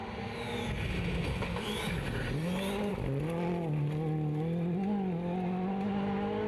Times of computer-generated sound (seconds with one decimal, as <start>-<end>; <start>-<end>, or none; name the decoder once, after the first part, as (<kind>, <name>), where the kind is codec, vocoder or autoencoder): none